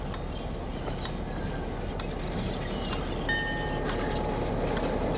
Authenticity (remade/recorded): recorded